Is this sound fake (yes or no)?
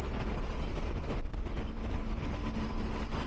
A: no